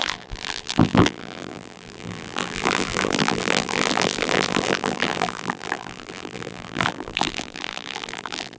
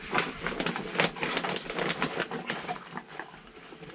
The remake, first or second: first